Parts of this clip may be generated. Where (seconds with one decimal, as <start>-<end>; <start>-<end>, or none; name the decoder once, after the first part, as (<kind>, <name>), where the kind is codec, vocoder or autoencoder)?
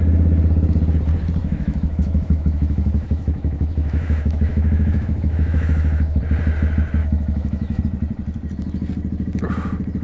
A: 1.4-6.2 (autoencoder, DAC-VAE); 7.0-7.8